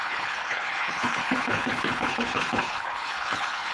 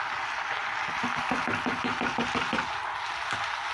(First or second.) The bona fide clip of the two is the second